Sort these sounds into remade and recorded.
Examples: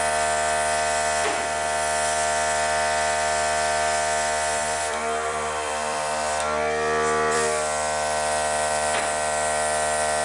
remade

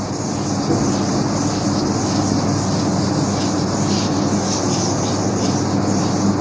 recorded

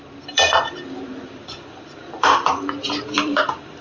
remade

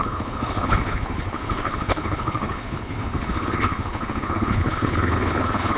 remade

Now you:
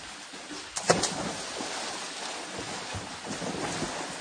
recorded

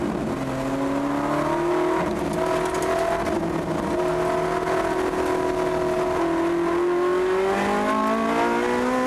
recorded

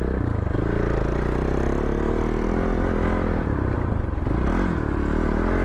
recorded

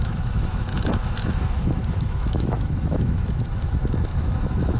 remade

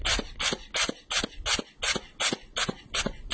recorded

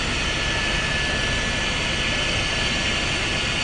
recorded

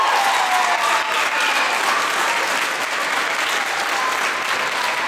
recorded